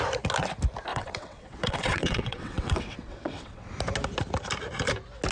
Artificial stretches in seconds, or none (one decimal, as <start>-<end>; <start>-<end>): 0.9-3.7